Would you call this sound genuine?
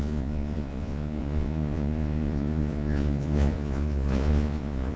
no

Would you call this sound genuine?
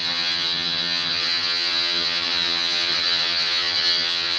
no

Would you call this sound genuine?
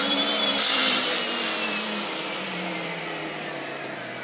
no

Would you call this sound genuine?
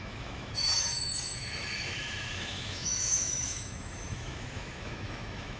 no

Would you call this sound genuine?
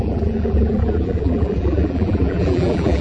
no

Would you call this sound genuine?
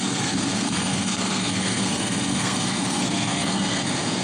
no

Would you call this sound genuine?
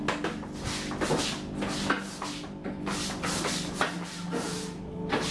yes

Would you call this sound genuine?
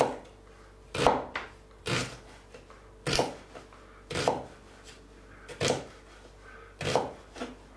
yes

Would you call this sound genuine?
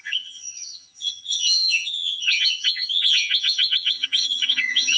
no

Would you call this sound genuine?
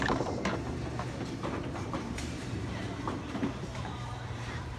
no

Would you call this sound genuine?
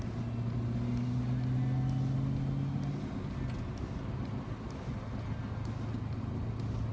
yes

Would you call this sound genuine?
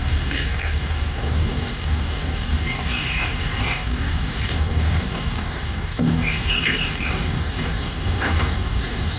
no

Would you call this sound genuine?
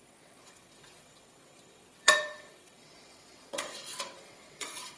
no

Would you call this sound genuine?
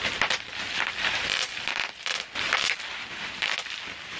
yes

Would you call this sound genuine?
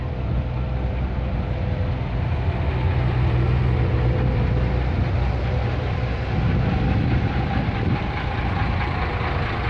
yes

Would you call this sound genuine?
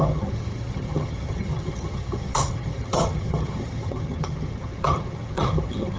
no